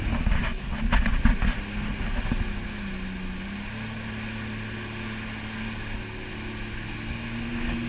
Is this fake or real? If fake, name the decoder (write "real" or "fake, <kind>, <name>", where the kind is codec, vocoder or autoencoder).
real